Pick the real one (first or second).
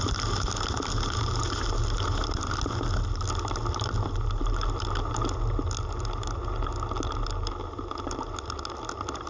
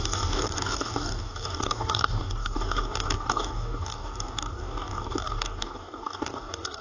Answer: first